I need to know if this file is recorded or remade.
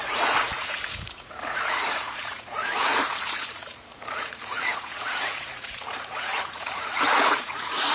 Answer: remade